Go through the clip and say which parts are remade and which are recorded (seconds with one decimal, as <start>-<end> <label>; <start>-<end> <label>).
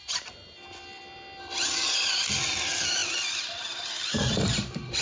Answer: 0.0-5.0 recorded